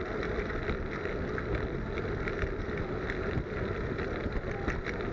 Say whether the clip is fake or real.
real